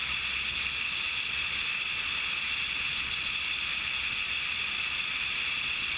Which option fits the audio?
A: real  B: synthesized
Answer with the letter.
A